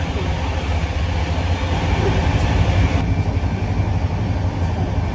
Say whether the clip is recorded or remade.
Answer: recorded